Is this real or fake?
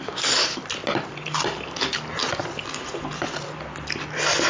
real